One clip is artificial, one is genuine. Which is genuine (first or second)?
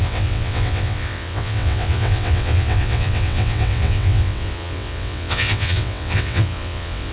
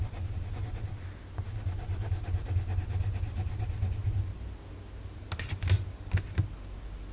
second